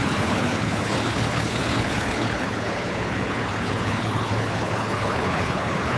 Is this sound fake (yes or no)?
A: yes